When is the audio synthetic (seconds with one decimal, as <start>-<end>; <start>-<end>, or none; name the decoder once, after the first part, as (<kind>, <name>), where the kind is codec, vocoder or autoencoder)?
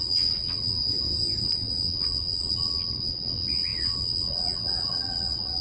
0.0-0.8 (vocoder, WaveNeXt); 1.4-5.6